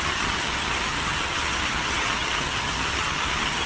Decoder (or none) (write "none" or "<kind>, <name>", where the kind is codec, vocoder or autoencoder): vocoder, HiFi-GAN